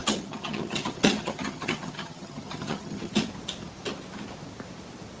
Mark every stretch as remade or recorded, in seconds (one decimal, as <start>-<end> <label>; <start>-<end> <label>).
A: 0.0-3.1 remade; 3.1-5.2 recorded